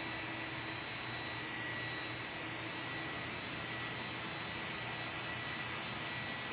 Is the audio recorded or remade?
recorded